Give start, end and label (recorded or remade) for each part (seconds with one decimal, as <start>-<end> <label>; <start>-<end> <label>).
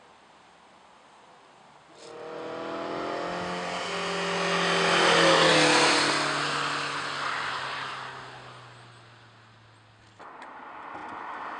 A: 0.0-11.6 recorded